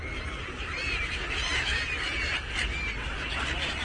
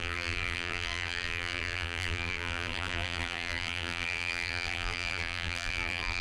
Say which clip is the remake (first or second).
second